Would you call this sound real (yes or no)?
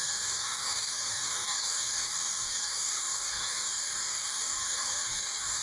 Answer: no